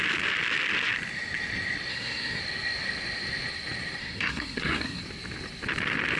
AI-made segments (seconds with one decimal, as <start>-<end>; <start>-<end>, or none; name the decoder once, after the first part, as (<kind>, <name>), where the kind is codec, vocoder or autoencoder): 1.9-2.4 (codec, SNAC); 4.0-5.0